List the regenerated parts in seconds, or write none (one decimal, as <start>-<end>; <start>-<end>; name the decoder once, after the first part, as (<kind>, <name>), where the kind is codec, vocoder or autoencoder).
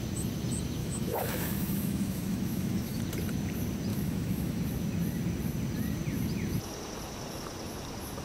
0.8-3.0 (autoencoder, DAC-VAE); 3.9-4.6